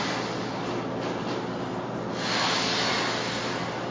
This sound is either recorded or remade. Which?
recorded